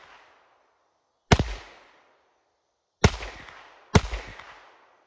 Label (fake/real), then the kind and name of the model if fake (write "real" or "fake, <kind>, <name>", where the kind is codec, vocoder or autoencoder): real